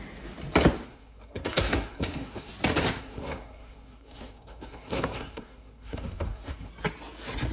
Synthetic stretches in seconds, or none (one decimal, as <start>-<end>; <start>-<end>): 0.9-2.5; 3.0-6.7